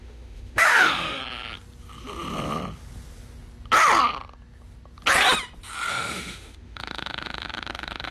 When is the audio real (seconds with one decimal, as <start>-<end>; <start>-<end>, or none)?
1.2-5.9